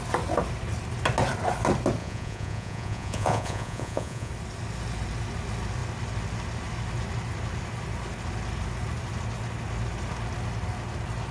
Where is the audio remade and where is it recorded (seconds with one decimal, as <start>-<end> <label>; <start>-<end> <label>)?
0.0-2.0 recorded; 2.0-4.3 remade; 4.3-11.3 recorded